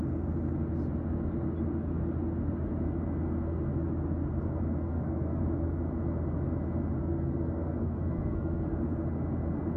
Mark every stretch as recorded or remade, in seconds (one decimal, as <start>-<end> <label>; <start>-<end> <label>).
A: 0.0-4.8 recorded; 4.8-5.4 remade; 5.4-7.0 recorded; 7.0-8.6 remade; 8.6-9.8 recorded